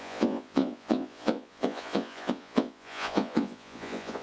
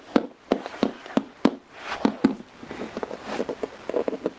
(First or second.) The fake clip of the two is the first